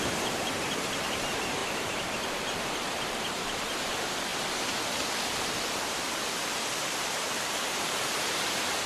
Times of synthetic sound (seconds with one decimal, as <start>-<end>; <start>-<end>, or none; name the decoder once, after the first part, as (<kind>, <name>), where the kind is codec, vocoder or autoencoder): 0.0-4.3 (vocoder, BigVGAN v2); 5.4-8.9